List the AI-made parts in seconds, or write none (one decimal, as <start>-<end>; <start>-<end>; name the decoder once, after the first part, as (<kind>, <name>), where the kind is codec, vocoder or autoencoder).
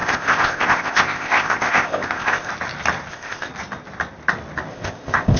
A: 0.0-2.5 (codec, ZipCodec); 3.1-3.5; 4.7-5.4